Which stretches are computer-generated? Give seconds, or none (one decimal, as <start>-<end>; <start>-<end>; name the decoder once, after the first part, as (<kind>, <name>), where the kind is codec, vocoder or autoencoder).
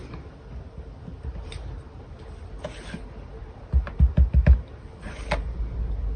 none